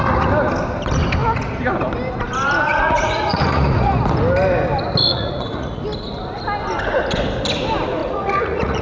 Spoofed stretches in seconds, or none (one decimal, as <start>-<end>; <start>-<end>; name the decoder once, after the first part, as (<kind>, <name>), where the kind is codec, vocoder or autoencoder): 2.7-4.0 (vocoder, Vocos); 5.1-5.8; 8.0-8.8